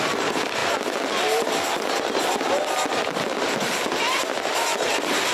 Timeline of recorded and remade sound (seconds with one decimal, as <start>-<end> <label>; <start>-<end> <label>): 0.0-5.3 recorded